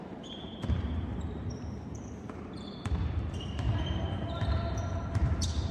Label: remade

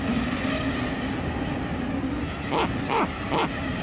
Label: recorded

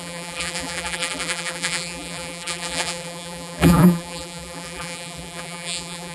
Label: remade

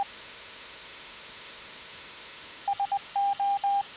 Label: remade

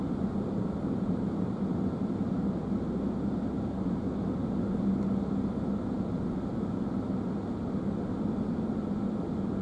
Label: recorded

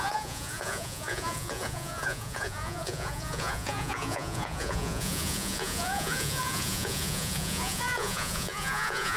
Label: remade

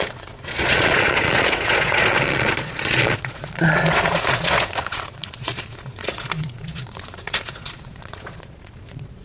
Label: remade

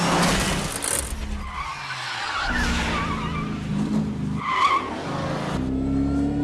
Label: recorded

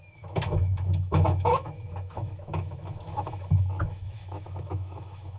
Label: remade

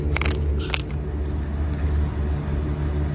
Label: recorded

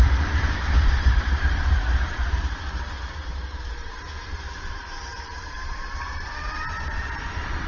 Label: remade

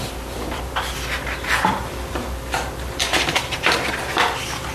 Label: remade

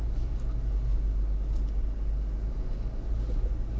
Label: recorded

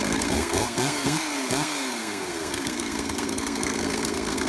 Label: remade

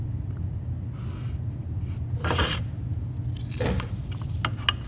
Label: recorded